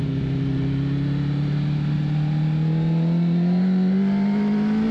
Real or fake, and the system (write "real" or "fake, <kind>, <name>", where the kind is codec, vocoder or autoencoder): real